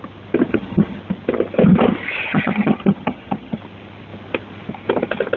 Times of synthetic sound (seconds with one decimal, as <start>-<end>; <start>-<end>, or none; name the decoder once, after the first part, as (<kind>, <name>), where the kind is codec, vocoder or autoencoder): 0.5-1.0 (vocoder, HiFi-GAN); 2.3-3.6